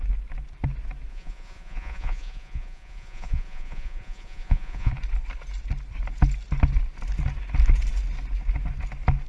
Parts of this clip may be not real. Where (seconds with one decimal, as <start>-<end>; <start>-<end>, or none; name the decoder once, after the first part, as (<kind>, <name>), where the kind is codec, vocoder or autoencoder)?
1.1-4.9 (vocoder, Vocos)